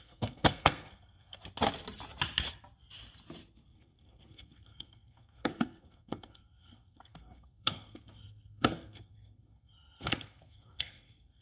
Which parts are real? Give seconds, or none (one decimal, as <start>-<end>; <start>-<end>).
1.4-3.7